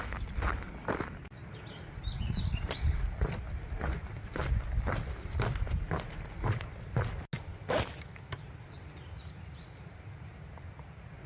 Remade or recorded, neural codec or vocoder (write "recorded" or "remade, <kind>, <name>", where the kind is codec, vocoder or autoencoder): recorded